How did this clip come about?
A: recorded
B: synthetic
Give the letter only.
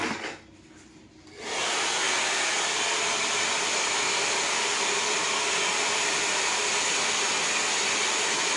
A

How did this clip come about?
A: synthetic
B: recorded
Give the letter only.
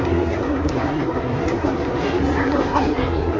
A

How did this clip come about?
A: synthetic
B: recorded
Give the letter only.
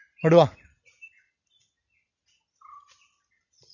B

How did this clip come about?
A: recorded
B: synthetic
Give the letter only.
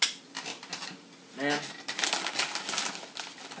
A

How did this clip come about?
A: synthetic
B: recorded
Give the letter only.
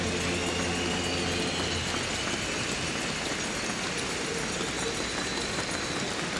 B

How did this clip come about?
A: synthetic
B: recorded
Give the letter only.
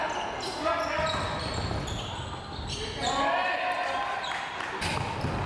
B